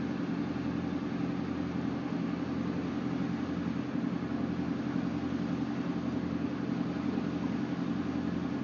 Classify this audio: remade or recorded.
recorded